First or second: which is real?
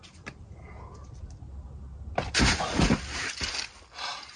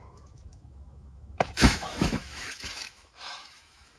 first